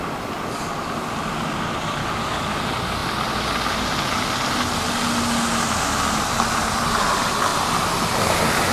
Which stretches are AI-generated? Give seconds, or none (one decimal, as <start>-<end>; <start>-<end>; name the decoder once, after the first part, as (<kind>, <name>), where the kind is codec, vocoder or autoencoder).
2.0-2.6 (codec, DAC)